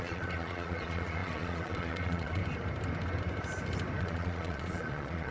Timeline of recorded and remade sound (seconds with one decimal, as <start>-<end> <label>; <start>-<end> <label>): 0.0-2.4 remade; 2.4-4.0 recorded; 4.0-5.3 remade